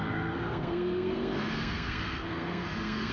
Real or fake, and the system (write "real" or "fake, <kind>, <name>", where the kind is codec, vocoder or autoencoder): fake, codec, SNAC